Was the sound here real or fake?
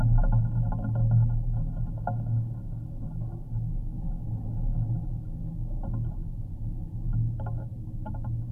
real